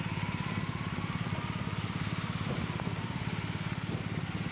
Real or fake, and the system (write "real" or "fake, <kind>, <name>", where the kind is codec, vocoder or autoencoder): real